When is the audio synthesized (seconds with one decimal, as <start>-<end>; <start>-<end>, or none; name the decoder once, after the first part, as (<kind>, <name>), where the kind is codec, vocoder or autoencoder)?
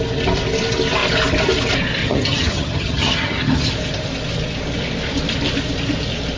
2.0-3.7 (vocoder, HiFi-GAN)